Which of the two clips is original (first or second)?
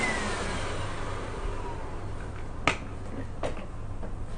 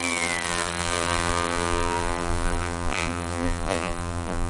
first